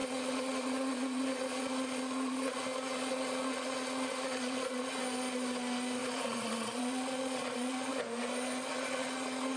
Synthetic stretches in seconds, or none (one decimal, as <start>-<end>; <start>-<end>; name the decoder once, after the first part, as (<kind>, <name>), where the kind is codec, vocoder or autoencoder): 0.0-5.0 (vocoder, Vocos); 6.0-7.9; 8.7-9.6